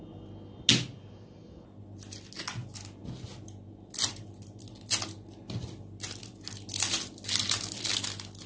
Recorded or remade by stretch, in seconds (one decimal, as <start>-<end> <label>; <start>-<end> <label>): 0.0-8.5 recorded